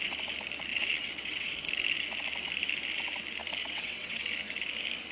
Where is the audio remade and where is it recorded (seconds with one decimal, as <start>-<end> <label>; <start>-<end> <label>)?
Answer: 0.0-0.7 recorded; 0.7-1.5 remade; 1.5-3.6 recorded; 3.6-4.2 remade; 4.2-5.1 recorded